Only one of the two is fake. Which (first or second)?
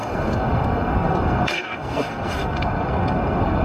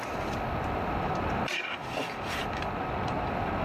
first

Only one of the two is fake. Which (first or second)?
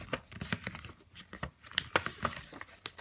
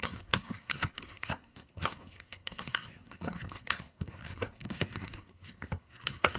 second